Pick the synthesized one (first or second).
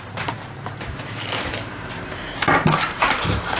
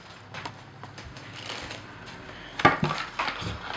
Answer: first